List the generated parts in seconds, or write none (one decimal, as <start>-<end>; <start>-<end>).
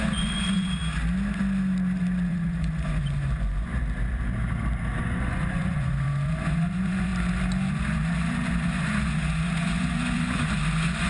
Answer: 0.0-0.8; 2.3-3.7; 5.0-7.1; 7.7-11.1